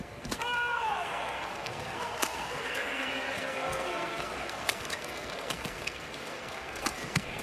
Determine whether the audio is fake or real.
fake